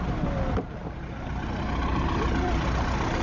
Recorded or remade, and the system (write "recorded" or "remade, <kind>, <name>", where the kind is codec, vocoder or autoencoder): recorded